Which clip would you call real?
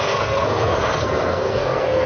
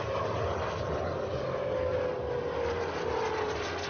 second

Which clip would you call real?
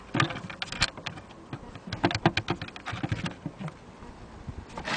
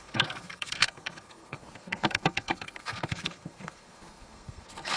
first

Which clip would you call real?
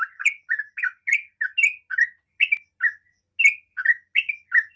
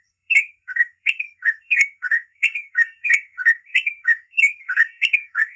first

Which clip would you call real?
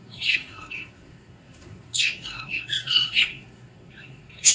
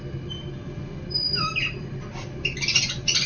second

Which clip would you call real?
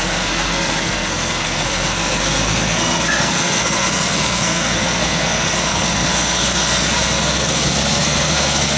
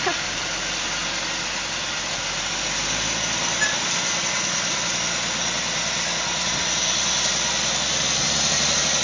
second